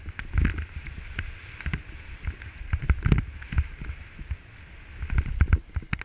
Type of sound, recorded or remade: recorded